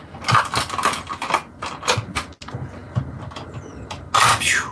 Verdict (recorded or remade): recorded